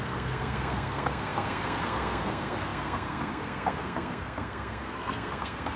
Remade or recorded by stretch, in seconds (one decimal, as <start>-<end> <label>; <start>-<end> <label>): 0.0-5.8 remade